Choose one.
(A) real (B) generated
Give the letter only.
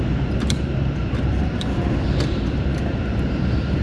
B